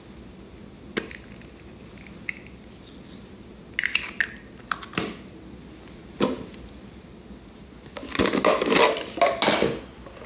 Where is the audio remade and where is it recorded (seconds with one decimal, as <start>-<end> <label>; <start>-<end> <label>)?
0.0-10.3 recorded